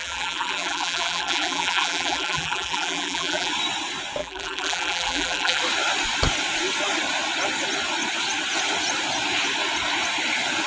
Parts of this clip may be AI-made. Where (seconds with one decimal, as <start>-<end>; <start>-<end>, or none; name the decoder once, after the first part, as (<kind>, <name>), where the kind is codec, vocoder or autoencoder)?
0.0-3.5 (vocoder, BigVGAN v2); 4.2-5.6